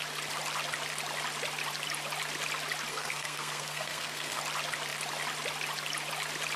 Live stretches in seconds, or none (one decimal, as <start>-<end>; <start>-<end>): 0.0-2.9; 4.4-6.6